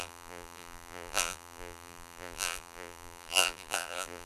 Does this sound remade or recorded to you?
remade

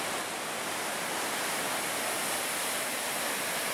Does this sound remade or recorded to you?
recorded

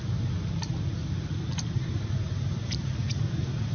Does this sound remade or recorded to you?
recorded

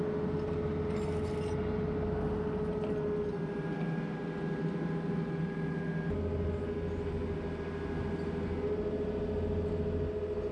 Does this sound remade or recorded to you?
recorded